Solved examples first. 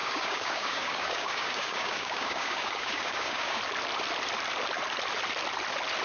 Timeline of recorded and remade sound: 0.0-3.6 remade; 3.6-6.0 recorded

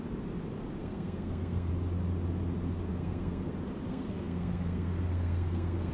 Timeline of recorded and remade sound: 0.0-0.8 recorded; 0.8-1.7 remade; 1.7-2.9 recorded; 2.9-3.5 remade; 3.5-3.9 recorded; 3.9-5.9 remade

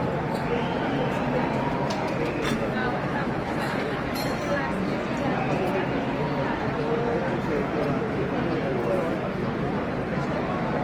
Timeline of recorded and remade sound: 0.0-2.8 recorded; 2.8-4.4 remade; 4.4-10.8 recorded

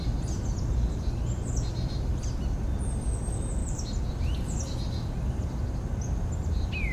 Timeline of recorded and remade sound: 0.0-6.9 recorded

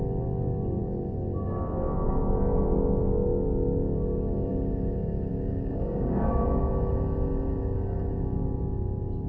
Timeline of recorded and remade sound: 0.0-5.3 recorded; 5.3-6.3 remade; 6.3-9.3 recorded

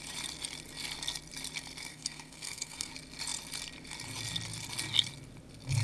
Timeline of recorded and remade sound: 0.0-1.9 recorded; 1.9-2.9 remade; 2.9-5.8 recorded

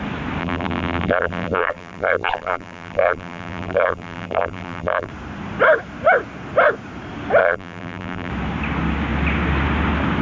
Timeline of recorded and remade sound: 0.0-0.4 recorded; 0.4-5.1 remade; 5.1-7.4 recorded; 7.4-8.3 remade; 8.3-10.2 recorded

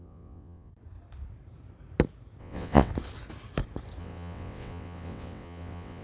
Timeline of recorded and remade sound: 0.0-0.7 remade; 0.7-2.4 recorded; 2.4-2.9 remade; 2.9-4.0 recorded; 4.0-6.0 remade